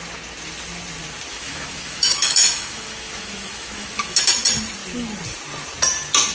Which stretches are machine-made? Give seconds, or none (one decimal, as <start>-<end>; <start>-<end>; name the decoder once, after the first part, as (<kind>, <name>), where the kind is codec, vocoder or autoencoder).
1.3-4.2 (autoencoder, DAC-VAE)